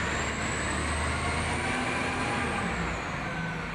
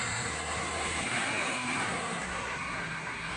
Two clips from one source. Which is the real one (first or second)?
first